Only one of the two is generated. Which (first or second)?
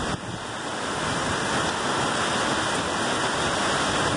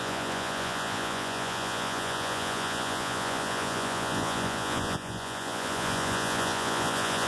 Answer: second